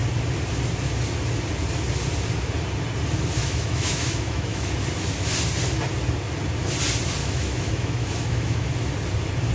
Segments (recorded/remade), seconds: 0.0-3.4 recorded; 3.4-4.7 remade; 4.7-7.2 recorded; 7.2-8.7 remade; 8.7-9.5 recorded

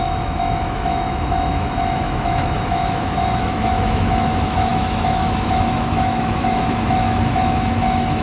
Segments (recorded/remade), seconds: 0.0-8.2 remade

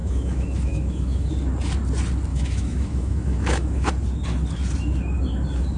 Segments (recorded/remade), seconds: 0.0-1.3 remade; 1.3-2.3 recorded; 2.3-3.9 remade; 3.9-5.8 recorded

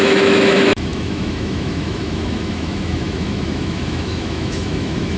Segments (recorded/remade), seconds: 0.0-5.2 remade

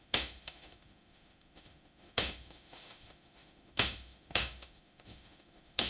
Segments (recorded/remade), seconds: 0.0-5.9 remade

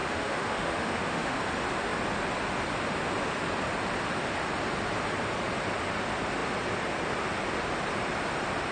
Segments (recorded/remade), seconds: 0.0-1.4 remade; 1.4-8.7 recorded